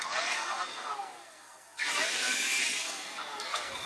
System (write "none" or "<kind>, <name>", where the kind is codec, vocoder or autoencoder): codec, SNAC